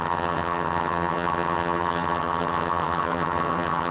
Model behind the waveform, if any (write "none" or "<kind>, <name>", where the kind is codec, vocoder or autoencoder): vocoder, HiFi-GAN